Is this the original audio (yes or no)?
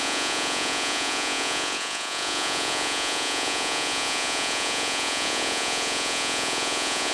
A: no